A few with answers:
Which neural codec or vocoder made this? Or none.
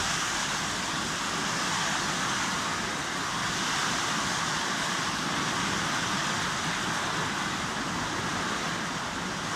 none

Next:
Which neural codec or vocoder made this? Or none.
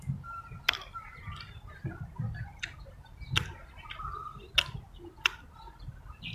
none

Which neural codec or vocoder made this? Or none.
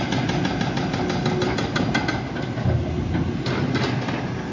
none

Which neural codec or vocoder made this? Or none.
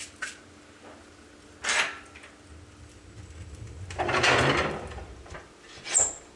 none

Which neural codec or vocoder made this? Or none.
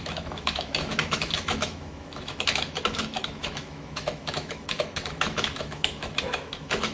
autoencoder, DAC-VAE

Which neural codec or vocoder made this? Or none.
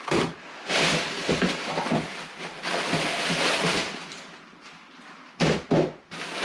none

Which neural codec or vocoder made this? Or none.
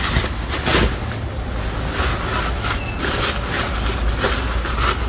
none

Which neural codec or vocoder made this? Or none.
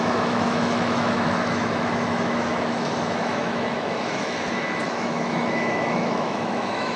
autoencoder, DAC-VAE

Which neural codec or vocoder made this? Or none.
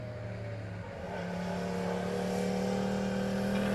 none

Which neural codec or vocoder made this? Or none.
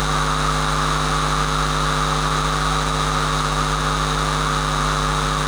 none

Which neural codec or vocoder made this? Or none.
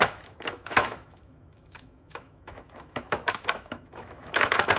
autoencoder, DAC-VAE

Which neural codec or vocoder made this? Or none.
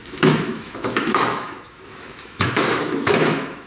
autoencoder, DAC-VAE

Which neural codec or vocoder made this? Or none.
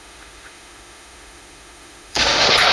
autoencoder, DAC-VAE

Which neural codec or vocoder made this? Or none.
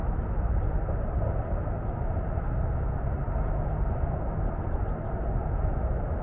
none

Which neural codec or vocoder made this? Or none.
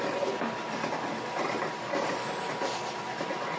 none